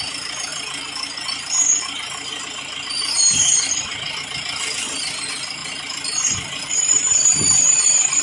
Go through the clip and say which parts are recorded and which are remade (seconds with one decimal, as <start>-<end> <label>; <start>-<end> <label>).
0.0-0.5 recorded; 0.5-1.8 remade; 1.8-2.3 recorded; 2.3-4.2 remade; 4.2-5.6 recorded; 5.6-8.2 remade